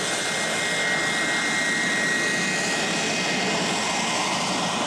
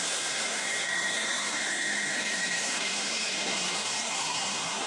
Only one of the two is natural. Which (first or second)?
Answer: first